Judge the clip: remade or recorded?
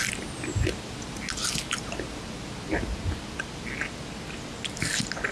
recorded